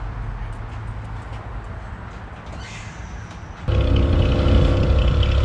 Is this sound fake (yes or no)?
no